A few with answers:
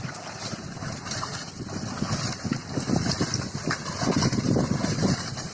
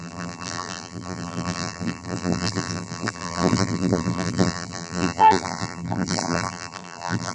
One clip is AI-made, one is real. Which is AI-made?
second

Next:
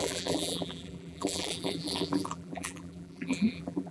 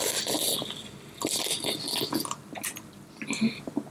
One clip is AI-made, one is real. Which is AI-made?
first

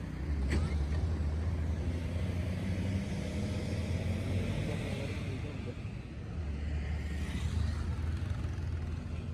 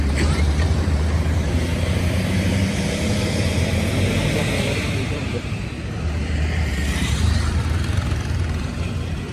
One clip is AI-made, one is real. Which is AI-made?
second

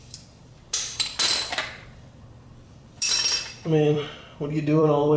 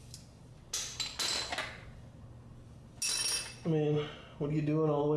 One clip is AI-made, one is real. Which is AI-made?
first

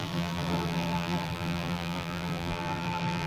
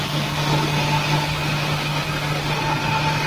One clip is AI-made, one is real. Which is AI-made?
first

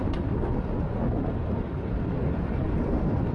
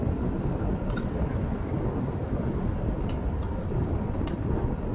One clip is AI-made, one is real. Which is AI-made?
second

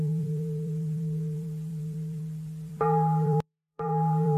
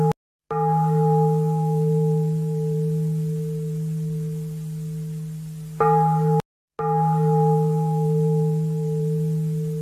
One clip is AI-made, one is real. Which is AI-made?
first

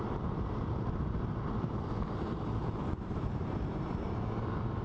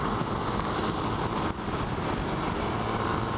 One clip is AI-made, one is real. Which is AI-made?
first